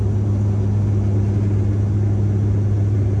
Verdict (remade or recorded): recorded